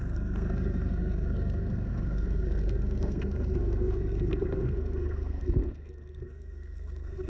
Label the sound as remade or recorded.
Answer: remade